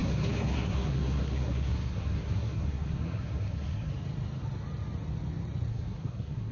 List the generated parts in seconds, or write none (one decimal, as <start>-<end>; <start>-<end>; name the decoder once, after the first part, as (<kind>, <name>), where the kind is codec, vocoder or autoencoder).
0.0-3.9 (codec, SNAC); 5.7-6.5

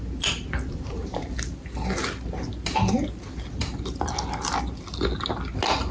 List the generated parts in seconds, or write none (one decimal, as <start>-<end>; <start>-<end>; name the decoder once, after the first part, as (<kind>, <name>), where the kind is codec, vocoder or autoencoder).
none

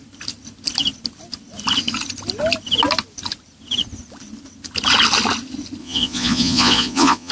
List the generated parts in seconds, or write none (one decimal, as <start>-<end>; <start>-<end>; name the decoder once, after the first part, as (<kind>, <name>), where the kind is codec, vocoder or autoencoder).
5.8-7.3 (vocoder, Vocos)

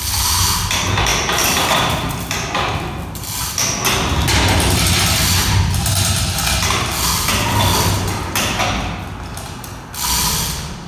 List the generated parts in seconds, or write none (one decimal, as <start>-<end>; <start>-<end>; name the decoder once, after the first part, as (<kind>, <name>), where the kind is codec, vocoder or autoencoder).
none